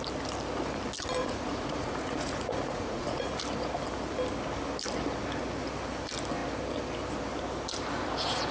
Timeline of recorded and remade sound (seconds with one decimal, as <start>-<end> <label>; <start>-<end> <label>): 0.0-1.2 recorded; 1.2-3.4 remade; 3.4-8.5 recorded